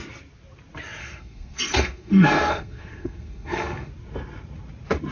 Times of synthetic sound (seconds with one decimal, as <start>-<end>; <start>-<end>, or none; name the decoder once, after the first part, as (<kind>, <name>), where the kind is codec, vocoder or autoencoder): 1.0-3.9 (codec, SNAC)